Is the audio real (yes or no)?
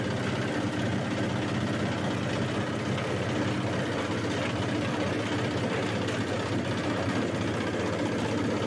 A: yes